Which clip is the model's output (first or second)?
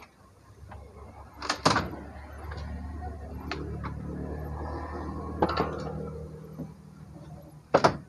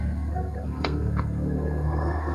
second